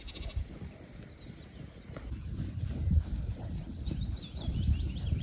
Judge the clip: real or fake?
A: real